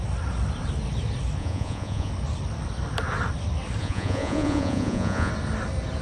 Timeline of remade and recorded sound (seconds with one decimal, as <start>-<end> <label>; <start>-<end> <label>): 0.0-1.4 recorded; 1.4-2.1 remade; 2.1-3.8 recorded; 3.8-5.3 remade; 5.3-6.0 recorded